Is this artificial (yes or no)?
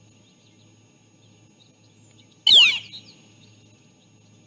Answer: no